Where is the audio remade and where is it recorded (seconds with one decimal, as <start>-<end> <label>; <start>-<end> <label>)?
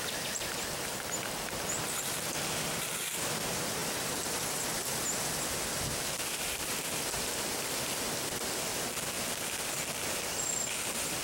0.0-11.2 recorded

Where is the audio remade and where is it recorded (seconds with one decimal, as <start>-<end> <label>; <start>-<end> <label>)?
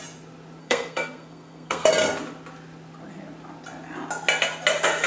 0.0-0.6 recorded; 0.6-1.9 remade; 1.9-5.1 recorded